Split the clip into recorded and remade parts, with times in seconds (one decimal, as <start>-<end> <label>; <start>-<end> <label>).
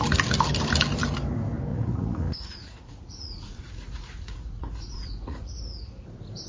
0.0-1.7 recorded; 1.7-5.6 remade; 5.6-6.5 recorded